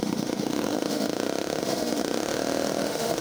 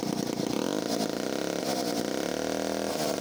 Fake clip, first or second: first